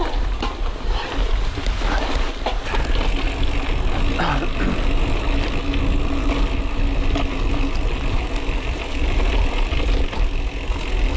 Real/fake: real